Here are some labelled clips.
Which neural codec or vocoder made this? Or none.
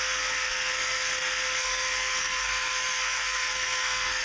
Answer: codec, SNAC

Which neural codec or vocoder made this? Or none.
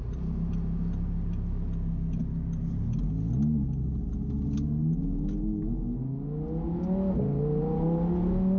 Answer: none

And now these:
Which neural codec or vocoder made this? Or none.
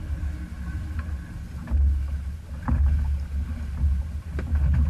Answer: none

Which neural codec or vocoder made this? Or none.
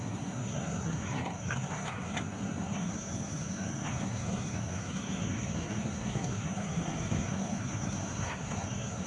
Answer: codec, SNAC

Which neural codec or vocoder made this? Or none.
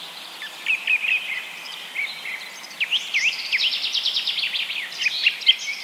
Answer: none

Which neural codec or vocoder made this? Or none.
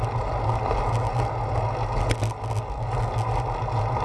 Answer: none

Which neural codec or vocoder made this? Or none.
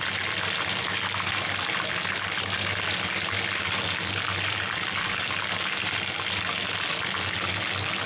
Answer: none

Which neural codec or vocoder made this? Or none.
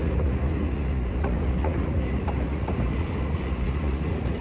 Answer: vocoder, Vocos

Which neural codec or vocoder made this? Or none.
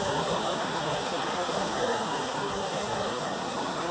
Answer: codec, SNAC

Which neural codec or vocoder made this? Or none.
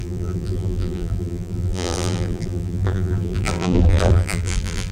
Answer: vocoder, BigVGAN v2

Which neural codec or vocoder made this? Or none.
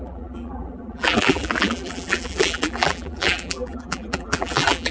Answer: vocoder, BigVGAN v2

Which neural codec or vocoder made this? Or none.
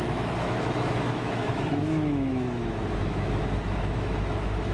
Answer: autoencoder, DAC-VAE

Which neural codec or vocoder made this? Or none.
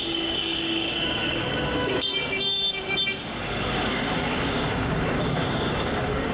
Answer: codec, DAC